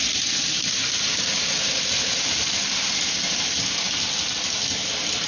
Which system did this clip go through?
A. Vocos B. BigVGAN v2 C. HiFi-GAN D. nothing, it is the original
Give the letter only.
D